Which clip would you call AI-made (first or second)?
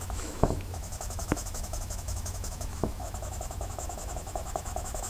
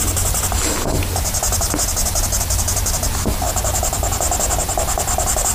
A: first